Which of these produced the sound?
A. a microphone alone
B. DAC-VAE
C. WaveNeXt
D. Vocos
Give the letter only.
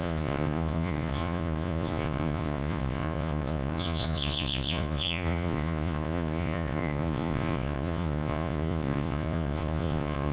D